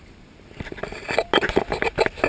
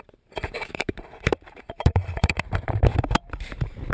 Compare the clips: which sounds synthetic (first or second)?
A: second